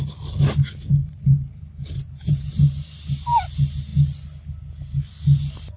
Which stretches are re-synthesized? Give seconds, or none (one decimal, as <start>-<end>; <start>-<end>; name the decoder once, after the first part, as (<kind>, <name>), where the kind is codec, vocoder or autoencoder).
1.0-2.5 (vocoder, BigVGAN v2)